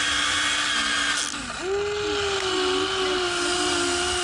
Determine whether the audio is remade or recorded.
recorded